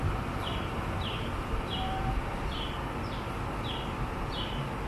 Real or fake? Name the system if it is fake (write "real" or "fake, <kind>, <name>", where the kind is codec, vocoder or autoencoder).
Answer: real